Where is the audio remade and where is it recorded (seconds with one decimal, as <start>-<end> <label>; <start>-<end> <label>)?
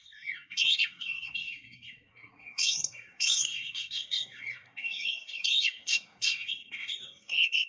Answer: 0.0-7.7 remade